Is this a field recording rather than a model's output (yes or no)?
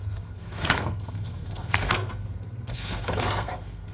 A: no